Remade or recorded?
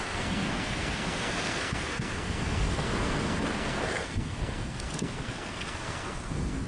remade